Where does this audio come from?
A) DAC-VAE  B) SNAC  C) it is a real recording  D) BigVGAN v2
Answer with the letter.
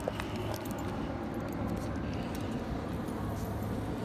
C